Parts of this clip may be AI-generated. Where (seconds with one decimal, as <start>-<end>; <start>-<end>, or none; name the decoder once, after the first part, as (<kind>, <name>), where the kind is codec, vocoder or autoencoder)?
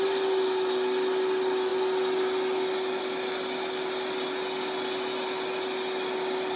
none